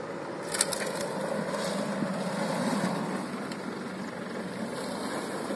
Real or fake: real